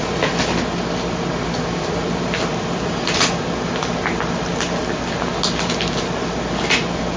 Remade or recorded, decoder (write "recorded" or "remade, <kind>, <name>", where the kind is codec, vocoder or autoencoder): recorded